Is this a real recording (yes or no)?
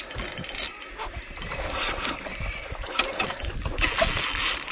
yes